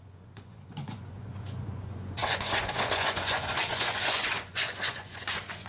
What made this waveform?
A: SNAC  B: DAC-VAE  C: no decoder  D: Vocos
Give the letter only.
D